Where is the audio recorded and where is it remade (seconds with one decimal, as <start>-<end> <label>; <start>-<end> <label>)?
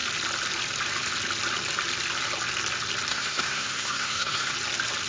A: 0.0-3.1 recorded; 3.1-4.5 remade; 4.5-5.1 recorded